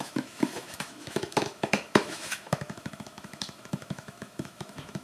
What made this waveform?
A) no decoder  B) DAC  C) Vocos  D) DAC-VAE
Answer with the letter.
D